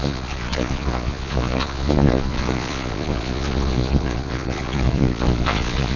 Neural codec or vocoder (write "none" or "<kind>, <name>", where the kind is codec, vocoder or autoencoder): vocoder, Vocos